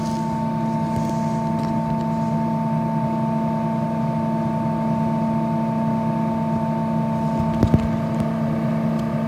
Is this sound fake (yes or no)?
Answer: no